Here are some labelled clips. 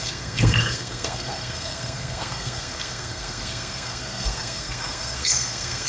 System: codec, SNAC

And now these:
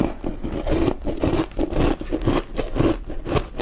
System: none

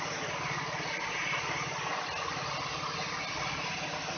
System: none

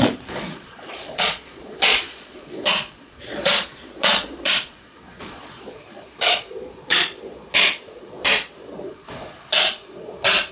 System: vocoder, Vocos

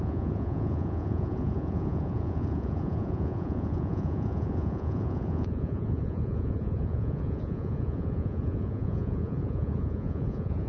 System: vocoder, Vocos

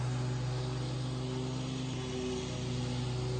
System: none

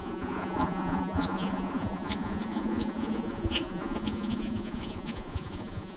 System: vocoder, Vocos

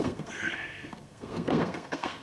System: codec, SNAC